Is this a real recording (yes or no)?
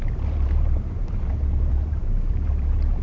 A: no